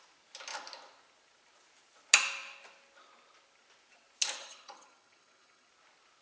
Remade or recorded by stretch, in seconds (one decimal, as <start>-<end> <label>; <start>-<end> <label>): 0.0-4.4 recorded; 4.4-5.7 remade; 5.7-6.2 recorded

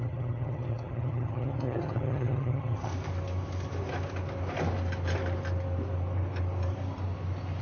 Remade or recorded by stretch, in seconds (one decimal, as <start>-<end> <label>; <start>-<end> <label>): 0.0-2.9 remade; 2.9-7.6 recorded

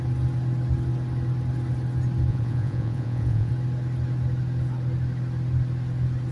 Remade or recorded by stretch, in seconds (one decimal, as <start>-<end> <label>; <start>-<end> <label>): 0.0-2.3 recorded; 2.3-3.5 remade; 3.5-6.3 recorded